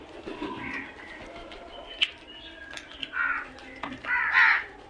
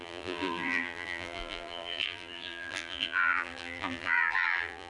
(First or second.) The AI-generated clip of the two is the second